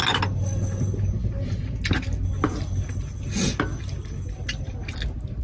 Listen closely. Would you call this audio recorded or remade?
recorded